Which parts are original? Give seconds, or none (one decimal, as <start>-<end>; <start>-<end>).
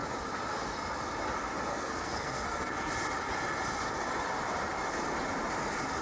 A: 0.0-1.7; 2.9-6.0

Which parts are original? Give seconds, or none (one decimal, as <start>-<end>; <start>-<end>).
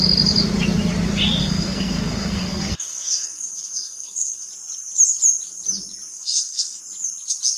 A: 0.0-1.4; 4.5-6.1; 6.8-7.6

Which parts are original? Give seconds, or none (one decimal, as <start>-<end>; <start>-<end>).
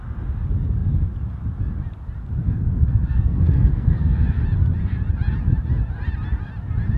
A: 0.0-2.4; 4.4-7.0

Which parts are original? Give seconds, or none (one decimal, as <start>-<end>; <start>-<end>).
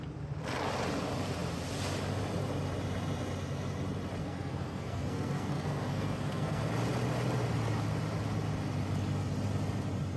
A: 0.0-4.2; 6.7-10.2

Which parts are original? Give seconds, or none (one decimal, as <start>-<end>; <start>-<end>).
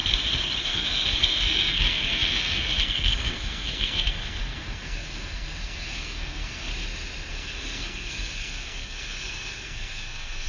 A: 0.0-0.6; 6.7-7.3